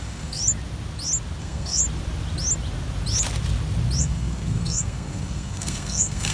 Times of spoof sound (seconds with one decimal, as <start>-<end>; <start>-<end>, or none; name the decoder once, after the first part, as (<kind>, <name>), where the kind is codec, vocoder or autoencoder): 0.0-0.4 (codec, SNAC); 1.4-1.8; 4.0-6.3